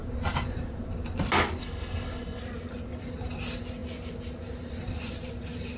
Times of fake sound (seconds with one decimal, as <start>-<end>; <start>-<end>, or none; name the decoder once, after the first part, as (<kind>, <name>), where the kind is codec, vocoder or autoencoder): 1.6-2.4 (codec, HILCodec)